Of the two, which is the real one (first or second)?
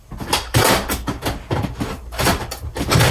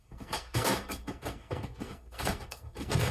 first